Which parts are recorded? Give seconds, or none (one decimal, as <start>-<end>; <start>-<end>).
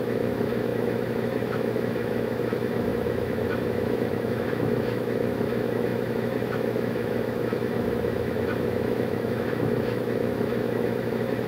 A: none